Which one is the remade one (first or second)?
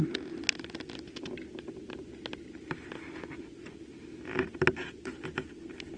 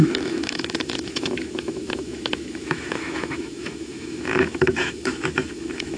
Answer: second